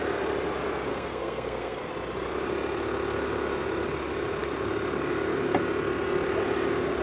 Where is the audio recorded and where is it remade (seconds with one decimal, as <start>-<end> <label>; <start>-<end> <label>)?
0.0-0.9 recorded; 0.9-1.9 remade; 1.9-7.0 recorded

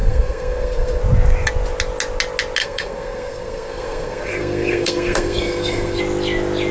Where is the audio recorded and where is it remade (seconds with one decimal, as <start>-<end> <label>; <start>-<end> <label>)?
0.0-1.0 remade; 1.0-2.6 recorded; 2.6-6.0 remade; 6.0-6.7 recorded

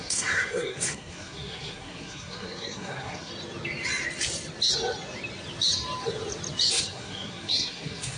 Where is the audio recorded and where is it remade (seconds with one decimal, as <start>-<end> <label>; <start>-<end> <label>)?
0.0-3.3 remade; 3.3-6.7 recorded; 6.7-8.2 remade

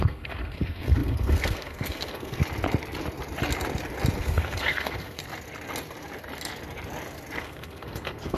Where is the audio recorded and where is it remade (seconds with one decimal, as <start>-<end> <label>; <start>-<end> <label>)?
0.0-2.4 remade; 2.4-4.2 recorded; 4.2-5.2 remade; 5.2-7.4 recorded; 7.4-8.4 remade